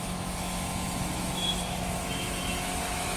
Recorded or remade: remade